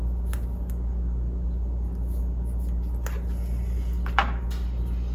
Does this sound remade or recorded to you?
recorded